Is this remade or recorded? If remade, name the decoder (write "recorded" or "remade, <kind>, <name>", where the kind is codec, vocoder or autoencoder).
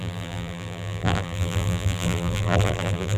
remade, vocoder, BigVGAN v2